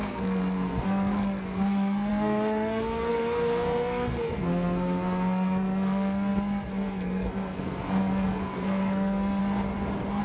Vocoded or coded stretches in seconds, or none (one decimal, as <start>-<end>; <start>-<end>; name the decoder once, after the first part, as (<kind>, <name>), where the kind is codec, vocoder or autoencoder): 0.0-9.4 (codec, SNAC)